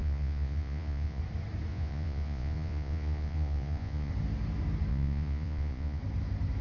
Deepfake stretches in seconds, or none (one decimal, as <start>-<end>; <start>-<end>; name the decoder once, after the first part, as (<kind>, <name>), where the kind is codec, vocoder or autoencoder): 0.0-1.2 (vocoder, Vocos); 1.7-4.1; 4.9-6.0